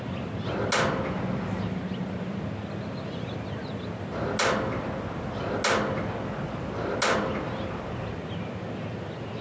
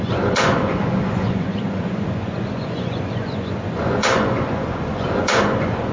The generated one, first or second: second